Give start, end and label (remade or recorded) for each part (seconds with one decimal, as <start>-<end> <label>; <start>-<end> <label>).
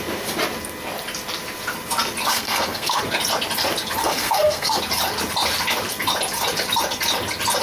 0.0-2.3 recorded; 2.3-3.0 remade; 3.0-4.0 recorded; 4.0-4.8 remade; 4.8-7.6 recorded